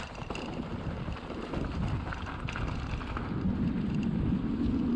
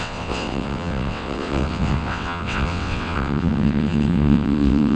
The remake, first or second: second